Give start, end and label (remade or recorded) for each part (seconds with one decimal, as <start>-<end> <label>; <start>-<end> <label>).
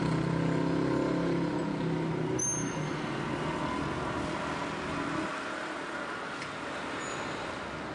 0.0-7.9 recorded